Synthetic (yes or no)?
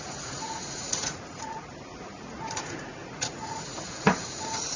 yes